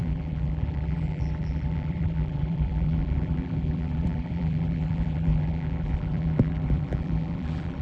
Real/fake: fake